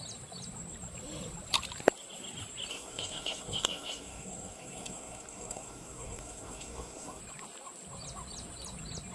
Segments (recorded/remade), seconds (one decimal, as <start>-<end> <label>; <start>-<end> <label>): 0.0-2.7 recorded; 2.7-7.2 remade; 7.2-9.1 recorded